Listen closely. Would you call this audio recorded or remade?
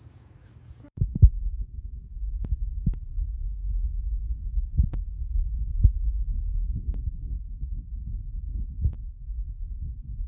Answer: remade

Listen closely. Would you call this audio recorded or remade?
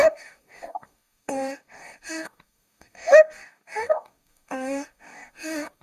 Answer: remade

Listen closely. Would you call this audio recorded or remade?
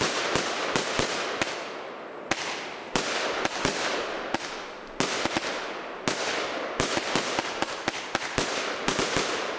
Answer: recorded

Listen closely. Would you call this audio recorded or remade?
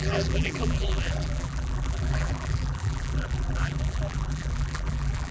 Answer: remade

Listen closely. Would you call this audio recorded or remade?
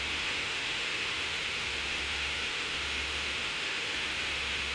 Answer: remade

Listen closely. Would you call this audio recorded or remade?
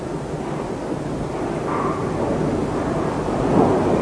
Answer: recorded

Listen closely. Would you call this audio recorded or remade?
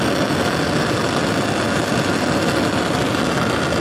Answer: recorded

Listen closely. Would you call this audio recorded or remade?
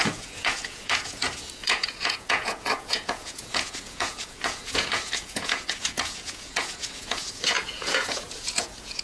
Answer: remade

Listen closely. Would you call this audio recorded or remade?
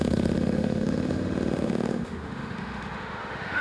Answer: remade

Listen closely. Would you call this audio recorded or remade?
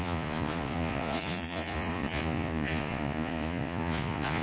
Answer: remade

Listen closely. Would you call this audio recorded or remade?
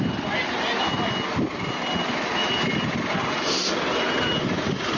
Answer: recorded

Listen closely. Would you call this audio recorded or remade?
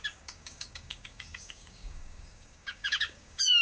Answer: remade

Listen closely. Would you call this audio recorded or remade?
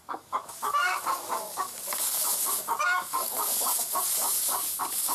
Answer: remade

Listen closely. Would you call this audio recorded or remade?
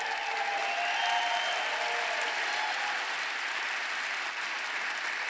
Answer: recorded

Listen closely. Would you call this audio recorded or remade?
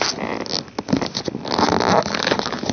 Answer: recorded